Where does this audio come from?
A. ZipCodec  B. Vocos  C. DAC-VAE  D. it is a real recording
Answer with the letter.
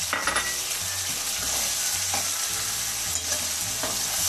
D